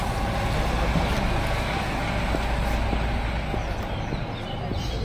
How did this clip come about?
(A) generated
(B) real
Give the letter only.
B